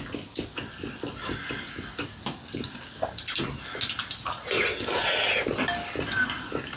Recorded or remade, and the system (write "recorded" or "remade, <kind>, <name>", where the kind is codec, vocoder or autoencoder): recorded